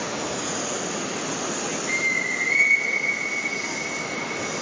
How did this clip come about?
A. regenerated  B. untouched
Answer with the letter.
B